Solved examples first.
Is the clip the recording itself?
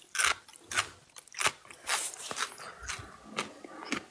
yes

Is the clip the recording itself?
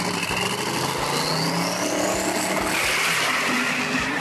yes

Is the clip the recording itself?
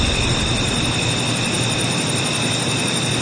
yes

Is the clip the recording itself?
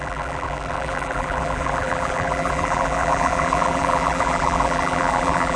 no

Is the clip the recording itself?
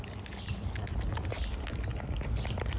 yes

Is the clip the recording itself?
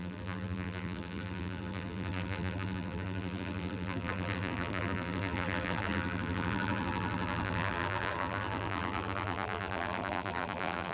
no